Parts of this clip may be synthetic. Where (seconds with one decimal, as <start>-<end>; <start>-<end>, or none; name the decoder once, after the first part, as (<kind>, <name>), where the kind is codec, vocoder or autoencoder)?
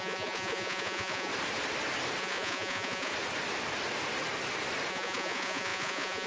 0.0-1.3 (vocoder, Vocos); 2.2-3.1; 4.9-6.3